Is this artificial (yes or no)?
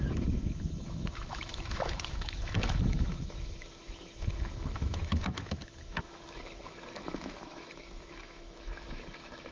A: yes